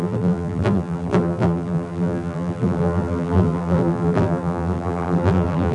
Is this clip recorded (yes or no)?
no